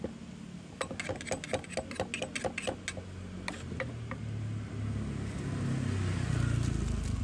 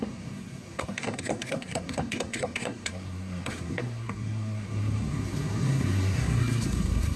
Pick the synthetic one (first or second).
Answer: second